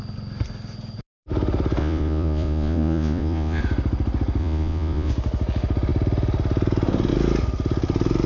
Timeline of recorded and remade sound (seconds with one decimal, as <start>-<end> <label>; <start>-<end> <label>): 0.0-1.8 recorded; 1.8-3.6 remade; 3.6-4.4 recorded; 4.4-5.1 remade; 5.1-8.3 recorded